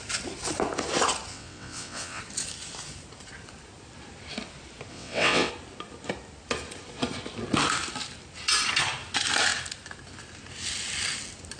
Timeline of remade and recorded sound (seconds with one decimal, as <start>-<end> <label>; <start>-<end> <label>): 0.0-1.3 recorded; 1.3-2.2 remade; 2.2-4.9 recorded; 4.9-5.5 remade; 5.5-11.6 recorded

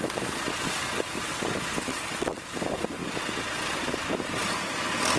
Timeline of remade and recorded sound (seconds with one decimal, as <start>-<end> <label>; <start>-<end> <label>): 0.0-1.8 recorded; 1.8-2.4 remade; 2.4-5.2 recorded

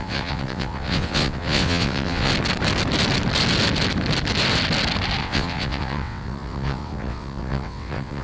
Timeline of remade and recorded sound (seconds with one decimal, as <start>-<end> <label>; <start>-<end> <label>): 0.0-2.3 remade; 2.3-5.2 recorded; 5.2-8.2 remade

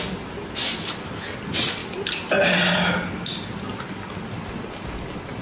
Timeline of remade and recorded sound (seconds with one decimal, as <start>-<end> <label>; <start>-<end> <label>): 0.0-5.4 recorded

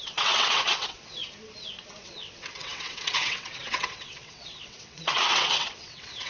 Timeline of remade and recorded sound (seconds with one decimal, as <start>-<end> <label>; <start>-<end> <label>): 0.0-1.2 remade; 1.2-2.0 recorded; 2.0-6.3 remade

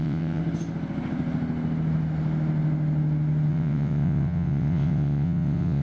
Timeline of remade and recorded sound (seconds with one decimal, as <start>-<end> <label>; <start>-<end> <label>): 0.0-0.4 remade; 0.4-3.5 recorded; 3.5-5.8 remade